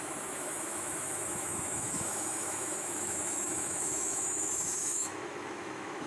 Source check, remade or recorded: remade